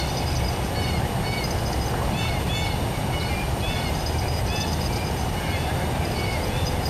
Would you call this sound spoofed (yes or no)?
no